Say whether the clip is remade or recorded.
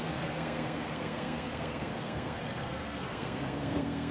remade